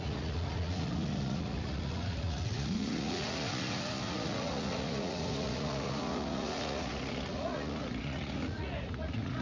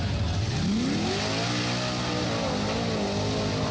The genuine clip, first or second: second